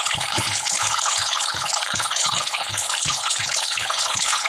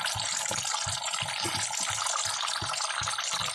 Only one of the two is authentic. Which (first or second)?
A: second